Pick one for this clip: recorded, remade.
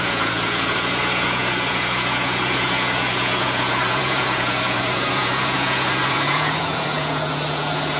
remade